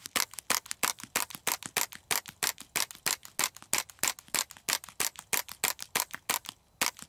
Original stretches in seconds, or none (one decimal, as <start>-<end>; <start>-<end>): 0.0-7.1